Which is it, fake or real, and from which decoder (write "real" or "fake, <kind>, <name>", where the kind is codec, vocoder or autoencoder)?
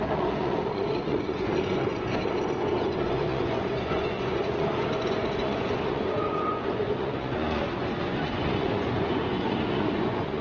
fake, vocoder, Vocos